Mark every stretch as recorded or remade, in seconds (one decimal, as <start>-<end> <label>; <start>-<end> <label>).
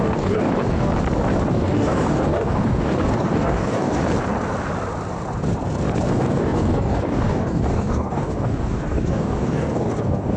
0.0-0.9 remade; 0.9-1.5 recorded; 1.5-4.0 remade; 4.0-6.1 recorded; 6.1-10.4 remade